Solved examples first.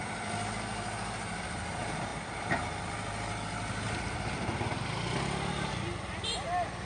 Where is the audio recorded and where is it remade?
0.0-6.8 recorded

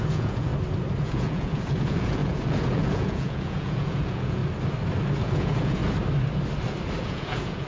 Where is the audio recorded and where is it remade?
0.0-0.5 remade; 0.5-1.0 recorded; 1.0-4.4 remade; 4.4-5.2 recorded; 5.2-5.8 remade; 5.8-7.0 recorded; 7.0-7.7 remade

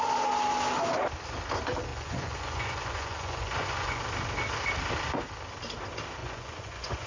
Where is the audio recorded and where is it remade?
0.0-1.9 recorded; 1.9-4.0 remade; 4.0-6.2 recorded; 6.2-7.1 remade

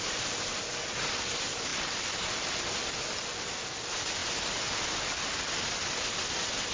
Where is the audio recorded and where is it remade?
0.0-6.7 recorded

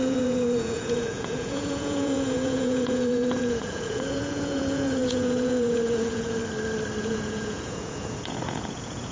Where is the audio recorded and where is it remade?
0.0-6.4 remade; 6.4-7.0 recorded; 7.0-9.1 remade

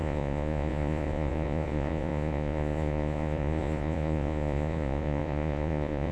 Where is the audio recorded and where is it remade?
0.0-6.1 remade

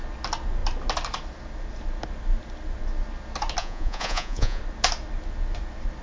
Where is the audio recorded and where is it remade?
0.0-3.6 recorded; 3.6-4.6 remade; 4.6-6.0 recorded